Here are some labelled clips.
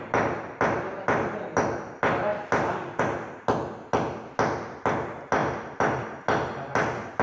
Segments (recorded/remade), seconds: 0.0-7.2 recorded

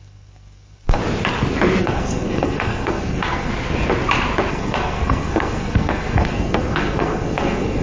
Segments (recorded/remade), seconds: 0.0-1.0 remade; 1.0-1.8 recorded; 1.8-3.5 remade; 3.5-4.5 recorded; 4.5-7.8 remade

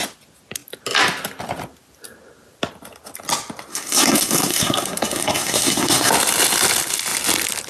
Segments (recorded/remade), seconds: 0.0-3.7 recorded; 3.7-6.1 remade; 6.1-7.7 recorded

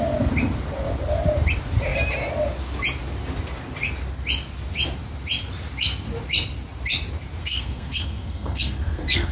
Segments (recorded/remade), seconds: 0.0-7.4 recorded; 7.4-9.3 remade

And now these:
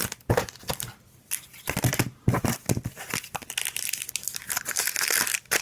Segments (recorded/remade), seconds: 0.0-5.6 recorded